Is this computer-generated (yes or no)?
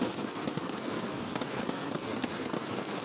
yes